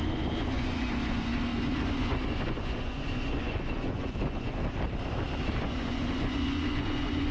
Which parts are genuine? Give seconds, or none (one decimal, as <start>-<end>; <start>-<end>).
4.6-5.6